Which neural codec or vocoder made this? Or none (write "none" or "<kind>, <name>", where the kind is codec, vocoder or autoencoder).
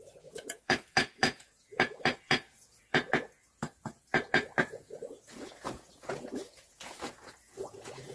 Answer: vocoder, Vocos